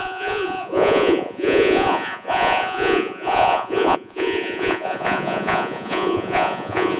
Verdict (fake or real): fake